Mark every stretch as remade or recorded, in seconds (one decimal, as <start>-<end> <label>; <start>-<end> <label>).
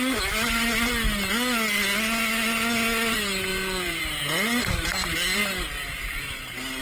0.0-3.5 recorded; 3.5-4.0 remade; 4.0-6.8 recorded